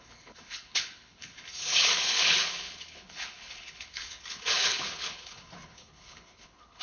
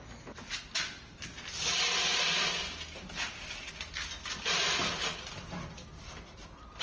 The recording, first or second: second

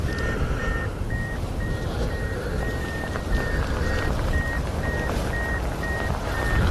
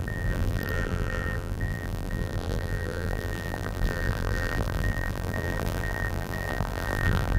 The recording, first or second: first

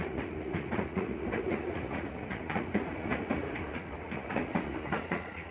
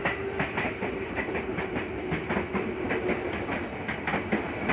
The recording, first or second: second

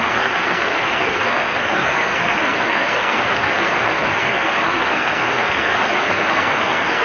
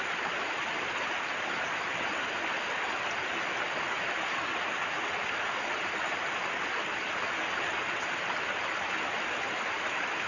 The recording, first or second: second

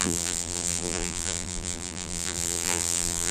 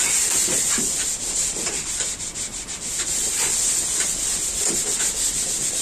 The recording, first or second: second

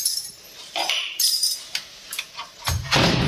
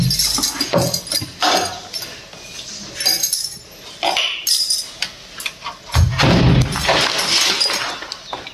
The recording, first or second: second